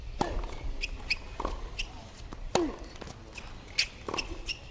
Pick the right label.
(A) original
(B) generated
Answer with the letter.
A